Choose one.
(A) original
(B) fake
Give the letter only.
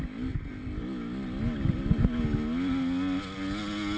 A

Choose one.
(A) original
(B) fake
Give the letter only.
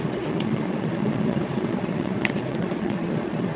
B